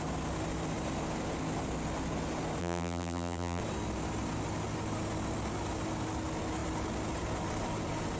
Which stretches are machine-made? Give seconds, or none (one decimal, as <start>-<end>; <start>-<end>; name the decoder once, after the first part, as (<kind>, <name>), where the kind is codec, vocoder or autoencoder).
2.6-3.6 (vocoder, BigVGAN v2)